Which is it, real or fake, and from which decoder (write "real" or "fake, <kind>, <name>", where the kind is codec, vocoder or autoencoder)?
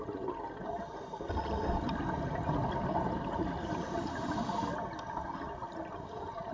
real